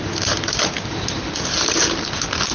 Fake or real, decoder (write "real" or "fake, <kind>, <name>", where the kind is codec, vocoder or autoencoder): real